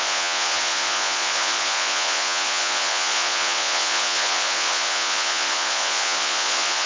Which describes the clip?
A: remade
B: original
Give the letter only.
A